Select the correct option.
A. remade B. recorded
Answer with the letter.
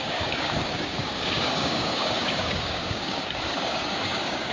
A